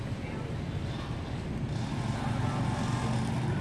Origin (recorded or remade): recorded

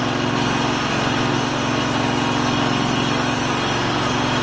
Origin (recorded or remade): recorded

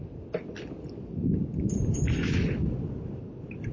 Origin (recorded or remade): recorded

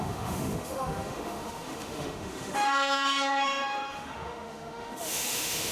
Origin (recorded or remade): remade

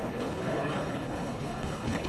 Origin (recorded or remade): remade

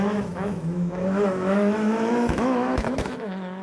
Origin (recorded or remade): remade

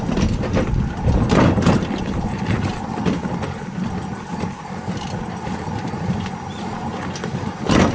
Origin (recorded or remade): recorded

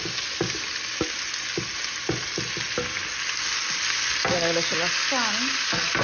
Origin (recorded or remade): recorded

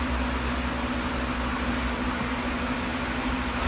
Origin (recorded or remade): recorded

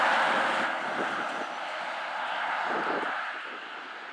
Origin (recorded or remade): recorded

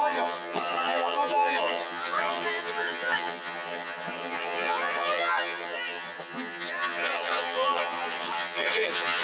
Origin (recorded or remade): remade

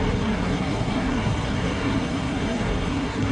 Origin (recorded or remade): remade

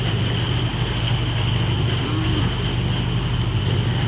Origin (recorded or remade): recorded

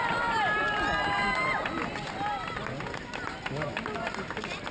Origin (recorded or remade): recorded